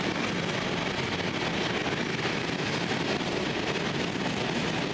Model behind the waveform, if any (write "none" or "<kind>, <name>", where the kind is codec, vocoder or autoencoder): none